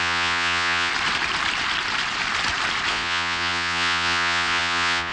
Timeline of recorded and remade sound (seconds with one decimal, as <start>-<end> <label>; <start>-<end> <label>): 0.0-0.9 remade; 0.9-2.9 recorded; 2.9-5.1 remade